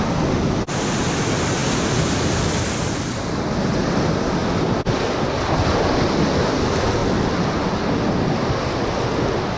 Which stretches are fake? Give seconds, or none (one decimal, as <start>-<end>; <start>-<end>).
none